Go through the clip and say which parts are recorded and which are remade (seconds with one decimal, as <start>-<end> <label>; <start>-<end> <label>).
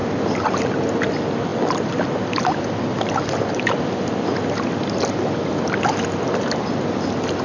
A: 0.0-7.4 recorded